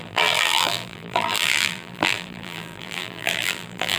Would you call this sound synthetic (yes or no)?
yes